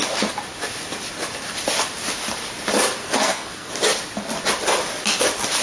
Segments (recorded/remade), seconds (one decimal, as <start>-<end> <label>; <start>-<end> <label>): 0.0-3.0 recorded; 3.0-3.7 remade; 3.7-5.6 recorded